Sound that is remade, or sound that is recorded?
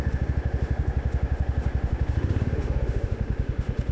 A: remade